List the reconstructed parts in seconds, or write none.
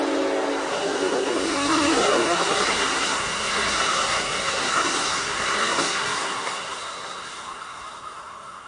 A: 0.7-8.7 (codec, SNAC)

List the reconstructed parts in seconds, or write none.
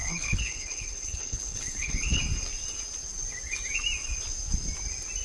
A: 0.0-2.2 (codec, HILCodec)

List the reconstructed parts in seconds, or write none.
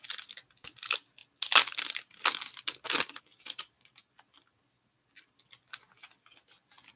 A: none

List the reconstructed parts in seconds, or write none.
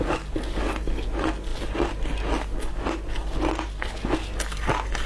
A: none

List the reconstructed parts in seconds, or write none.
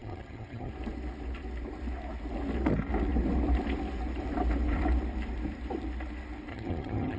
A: 0.0-0.7 (vocoder, HiFi-GAN); 6.5-7.2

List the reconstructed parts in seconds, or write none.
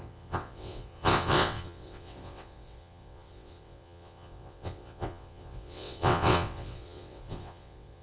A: 0.0-8.0 (vocoder, WaveNeXt)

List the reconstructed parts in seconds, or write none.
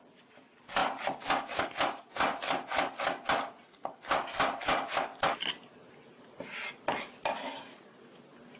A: none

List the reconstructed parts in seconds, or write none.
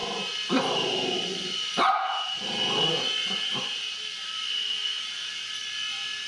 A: 0.0-6.3 (vocoder, BigVGAN v2)